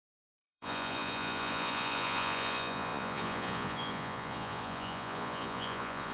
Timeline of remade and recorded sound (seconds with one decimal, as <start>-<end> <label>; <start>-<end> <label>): 0.0-6.1 remade